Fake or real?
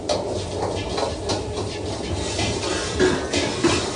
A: real